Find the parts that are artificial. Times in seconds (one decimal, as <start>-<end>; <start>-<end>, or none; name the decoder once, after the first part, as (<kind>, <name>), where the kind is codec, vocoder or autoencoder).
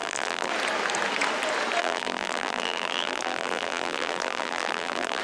0.0-0.5 (vocoder, BigVGAN v2); 1.8-5.2